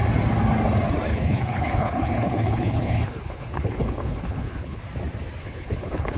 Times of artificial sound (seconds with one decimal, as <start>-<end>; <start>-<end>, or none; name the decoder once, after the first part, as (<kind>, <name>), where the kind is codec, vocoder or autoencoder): 1.1-4.8 (codec, HILCodec); 5.4-6.2